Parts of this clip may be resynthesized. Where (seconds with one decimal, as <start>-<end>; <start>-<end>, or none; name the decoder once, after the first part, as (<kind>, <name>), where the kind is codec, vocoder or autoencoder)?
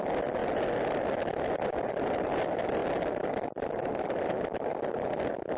none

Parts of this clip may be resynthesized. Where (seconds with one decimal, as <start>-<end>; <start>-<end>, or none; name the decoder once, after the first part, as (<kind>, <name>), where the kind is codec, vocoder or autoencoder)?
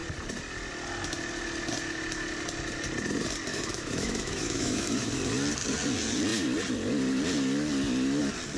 3.5-5.1 (autoencoder, DAC-VAE)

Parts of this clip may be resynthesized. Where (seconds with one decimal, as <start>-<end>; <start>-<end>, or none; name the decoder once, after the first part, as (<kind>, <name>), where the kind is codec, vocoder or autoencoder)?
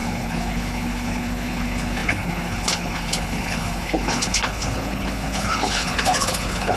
0.0-6.8 (codec, HILCodec)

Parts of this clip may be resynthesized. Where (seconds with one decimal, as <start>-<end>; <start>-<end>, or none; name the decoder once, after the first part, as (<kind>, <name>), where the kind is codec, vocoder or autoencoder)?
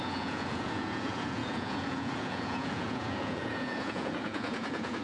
0.0-5.0 (vocoder, Vocos)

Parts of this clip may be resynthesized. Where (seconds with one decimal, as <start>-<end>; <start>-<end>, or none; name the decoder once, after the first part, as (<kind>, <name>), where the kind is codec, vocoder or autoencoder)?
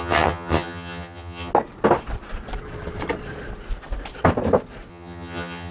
0.0-1.5 (vocoder, HiFi-GAN); 4.9-5.7